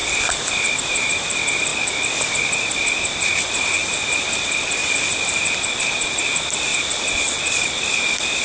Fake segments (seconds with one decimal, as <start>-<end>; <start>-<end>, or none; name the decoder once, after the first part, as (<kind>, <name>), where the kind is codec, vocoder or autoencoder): 0.7-1.7 (vocoder, BigVGAN v2); 3.4-4.8; 5.8-6.7